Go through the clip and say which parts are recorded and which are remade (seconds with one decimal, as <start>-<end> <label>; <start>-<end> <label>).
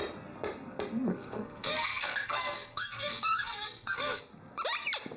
0.0-1.1 recorded; 1.1-4.2 remade; 4.2-5.2 recorded